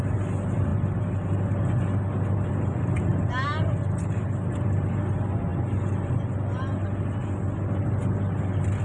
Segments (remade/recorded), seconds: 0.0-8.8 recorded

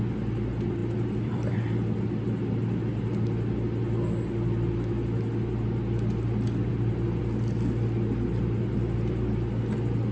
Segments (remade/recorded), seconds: 0.0-0.8 recorded; 0.8-2.0 remade; 2.0-10.1 recorded

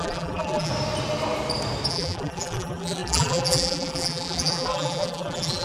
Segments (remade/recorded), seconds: 0.0-0.7 remade; 0.7-1.9 recorded; 1.9-5.6 remade

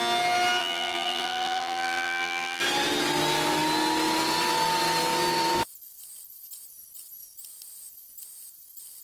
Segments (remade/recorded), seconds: 0.0-0.6 recorded; 0.6-2.6 remade; 2.6-9.0 recorded

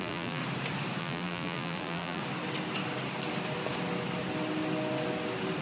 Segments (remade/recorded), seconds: 0.0-0.4 remade; 0.4-1.0 recorded; 1.0-2.2 remade; 2.2-5.6 recorded